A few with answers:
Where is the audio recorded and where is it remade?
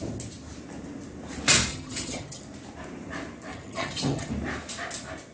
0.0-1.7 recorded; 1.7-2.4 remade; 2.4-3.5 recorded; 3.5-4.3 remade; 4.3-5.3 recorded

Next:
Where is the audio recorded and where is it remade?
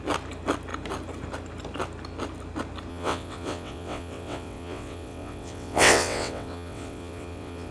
0.0-2.9 recorded; 2.9-7.7 remade